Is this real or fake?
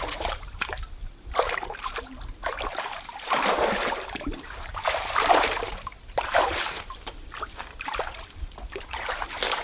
fake